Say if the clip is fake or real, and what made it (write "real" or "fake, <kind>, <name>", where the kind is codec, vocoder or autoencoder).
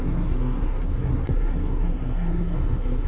fake, codec, SNAC